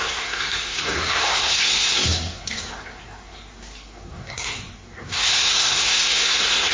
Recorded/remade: remade